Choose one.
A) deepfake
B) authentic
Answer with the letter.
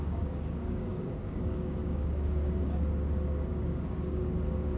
A